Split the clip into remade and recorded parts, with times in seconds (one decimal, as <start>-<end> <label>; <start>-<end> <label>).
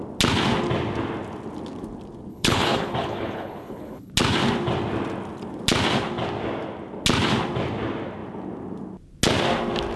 0.0-2.3 recorded; 2.3-4.1 remade; 4.1-10.0 recorded